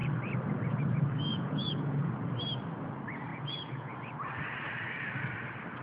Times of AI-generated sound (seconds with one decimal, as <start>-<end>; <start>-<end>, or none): 1.3-2.1; 3.3-3.9